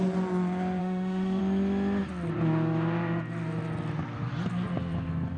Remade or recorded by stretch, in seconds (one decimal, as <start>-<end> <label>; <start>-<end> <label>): 0.0-0.8 recorded; 0.8-1.4 remade; 1.4-5.4 recorded